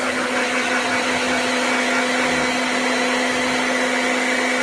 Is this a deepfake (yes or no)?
no